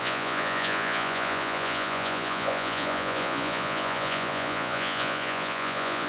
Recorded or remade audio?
remade